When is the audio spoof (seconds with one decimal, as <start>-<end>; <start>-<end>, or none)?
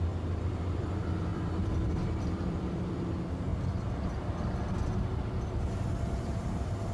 0.0-3.5; 6.2-6.9